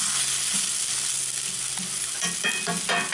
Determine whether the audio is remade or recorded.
recorded